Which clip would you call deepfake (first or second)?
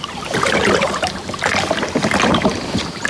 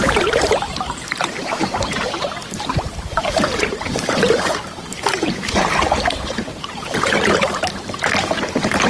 second